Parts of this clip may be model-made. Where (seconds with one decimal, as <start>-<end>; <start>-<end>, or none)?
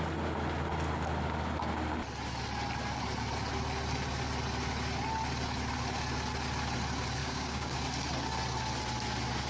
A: 7.2-7.8